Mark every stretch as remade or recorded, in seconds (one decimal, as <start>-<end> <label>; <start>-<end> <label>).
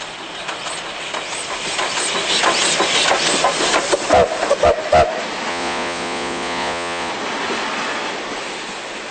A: 0.0-5.5 recorded; 5.5-7.1 remade; 7.1-9.1 recorded